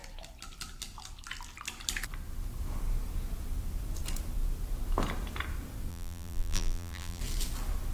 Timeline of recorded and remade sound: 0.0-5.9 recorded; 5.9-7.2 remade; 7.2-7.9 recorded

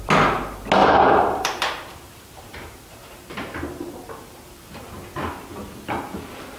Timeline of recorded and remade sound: 0.0-0.8 recorded; 0.8-4.8 remade; 4.8-6.6 recorded

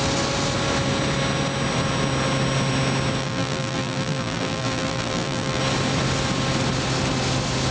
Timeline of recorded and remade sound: 0.0-3.2 recorded; 3.2-5.6 remade; 5.6-7.7 recorded

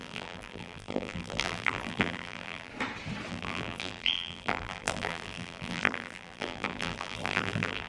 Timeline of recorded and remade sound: 0.0-2.7 remade; 2.7-3.3 recorded; 3.3-7.9 remade

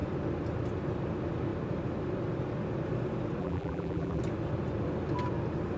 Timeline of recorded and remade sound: 0.0-3.4 recorded; 3.4-4.2 remade; 4.2-5.8 recorded

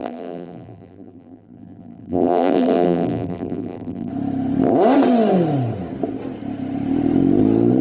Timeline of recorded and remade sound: 0.0-4.1 remade; 4.1-7.8 recorded

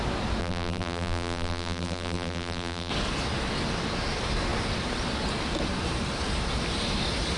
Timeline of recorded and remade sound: 0.0-0.4 recorded; 0.4-2.9 remade; 2.9-7.4 recorded